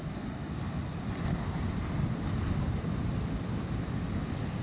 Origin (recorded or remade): recorded